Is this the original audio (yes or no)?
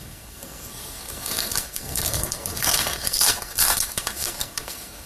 no